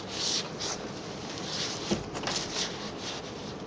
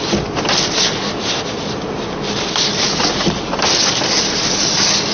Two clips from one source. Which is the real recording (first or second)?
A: second